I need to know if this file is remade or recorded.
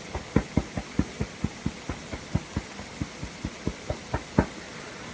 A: recorded